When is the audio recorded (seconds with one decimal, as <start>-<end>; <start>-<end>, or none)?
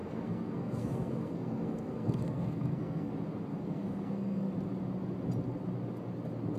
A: 3.1-3.5; 4.5-6.6